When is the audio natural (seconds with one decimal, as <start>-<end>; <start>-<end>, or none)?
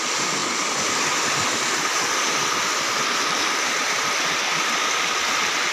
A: 0.0-5.7